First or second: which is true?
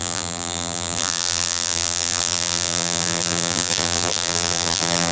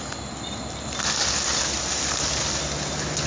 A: second